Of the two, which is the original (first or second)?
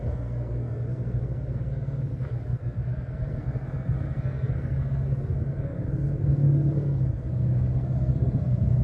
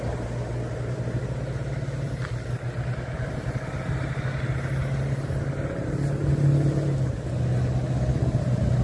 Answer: second